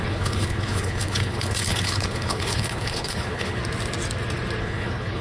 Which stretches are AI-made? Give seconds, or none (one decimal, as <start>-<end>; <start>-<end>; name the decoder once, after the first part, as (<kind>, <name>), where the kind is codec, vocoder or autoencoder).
0.0-3.6 (codec, HILCodec); 4.6-5.2

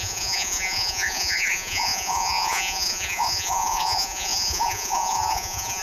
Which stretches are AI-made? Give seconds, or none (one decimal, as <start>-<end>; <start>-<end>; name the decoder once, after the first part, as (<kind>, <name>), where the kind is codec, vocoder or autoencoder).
0.0-5.8 (vocoder, Vocos)

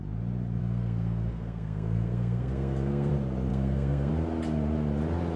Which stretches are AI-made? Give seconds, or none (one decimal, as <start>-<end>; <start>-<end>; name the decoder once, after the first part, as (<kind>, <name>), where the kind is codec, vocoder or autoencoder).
0.6-3.1 (codec, SNAC); 3.5-4.1